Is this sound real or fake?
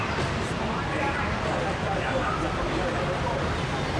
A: real